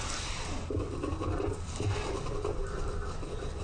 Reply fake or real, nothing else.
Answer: real